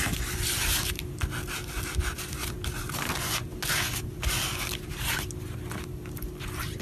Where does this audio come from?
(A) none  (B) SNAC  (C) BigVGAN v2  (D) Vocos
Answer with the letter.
A